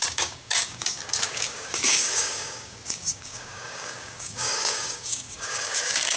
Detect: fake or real fake